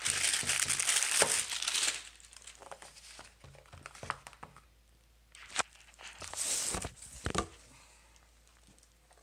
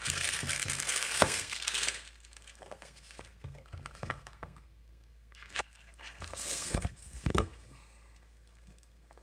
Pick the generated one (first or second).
second